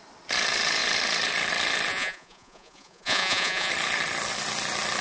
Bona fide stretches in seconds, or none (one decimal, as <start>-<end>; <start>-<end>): 0.0-1.9; 3.7-5.0